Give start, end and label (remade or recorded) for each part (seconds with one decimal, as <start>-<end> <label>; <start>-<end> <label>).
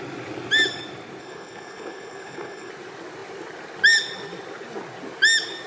0.0-1.2 recorded; 1.2-2.7 remade; 2.7-5.7 recorded